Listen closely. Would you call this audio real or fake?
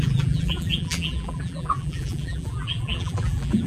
fake